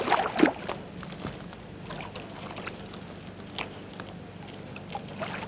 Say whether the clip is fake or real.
real